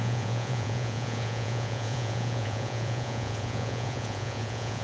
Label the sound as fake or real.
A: fake